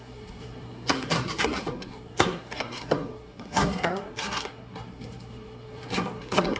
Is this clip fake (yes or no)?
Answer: yes